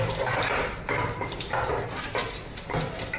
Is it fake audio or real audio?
fake